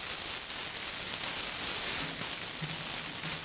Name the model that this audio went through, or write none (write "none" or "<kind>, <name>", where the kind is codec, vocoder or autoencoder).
none